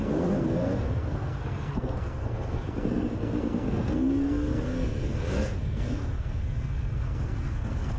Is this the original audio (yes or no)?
no